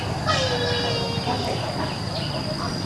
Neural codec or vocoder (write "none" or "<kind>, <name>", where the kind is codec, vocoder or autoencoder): none